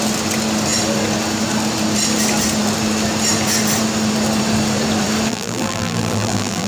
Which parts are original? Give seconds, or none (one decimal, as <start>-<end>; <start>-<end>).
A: 0.0-5.3